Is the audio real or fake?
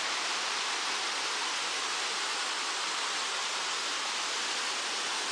fake